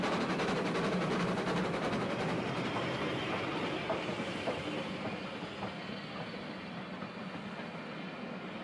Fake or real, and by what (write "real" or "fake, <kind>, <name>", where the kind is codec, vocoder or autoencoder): real